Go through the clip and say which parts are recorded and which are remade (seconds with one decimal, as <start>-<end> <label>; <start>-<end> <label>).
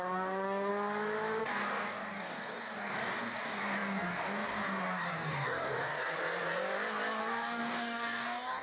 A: 0.0-0.7 remade; 0.7-1.4 recorded; 1.4-6.1 remade; 6.1-7.2 recorded; 7.2-8.6 remade